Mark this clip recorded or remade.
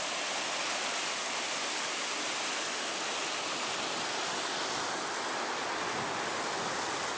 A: recorded